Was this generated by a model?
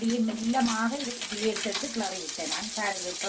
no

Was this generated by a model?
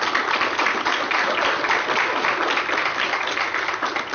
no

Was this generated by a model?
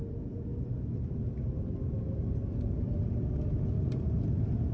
no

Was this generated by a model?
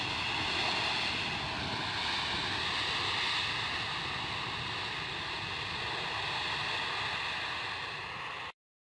no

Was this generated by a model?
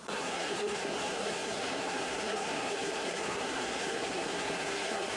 yes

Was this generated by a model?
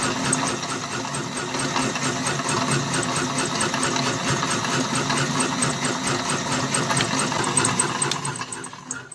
no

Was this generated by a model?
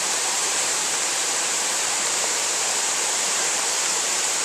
yes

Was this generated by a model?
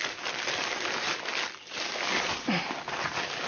no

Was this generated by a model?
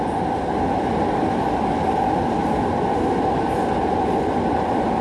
no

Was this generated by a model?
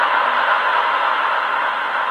no